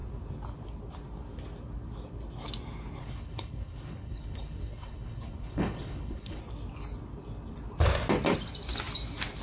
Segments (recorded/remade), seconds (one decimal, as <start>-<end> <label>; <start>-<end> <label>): 0.0-3.0 recorded; 3.0-6.4 remade; 6.4-9.4 recorded